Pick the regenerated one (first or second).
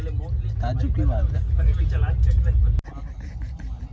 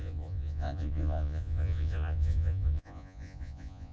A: second